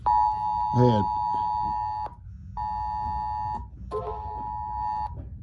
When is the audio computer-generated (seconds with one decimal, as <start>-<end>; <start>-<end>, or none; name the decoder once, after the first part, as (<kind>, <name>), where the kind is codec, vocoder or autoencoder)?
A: none